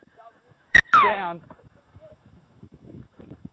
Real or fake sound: fake